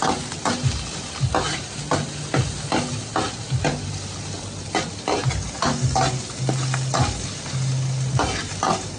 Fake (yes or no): no